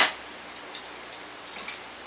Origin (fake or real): real